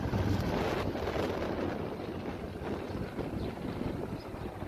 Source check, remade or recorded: recorded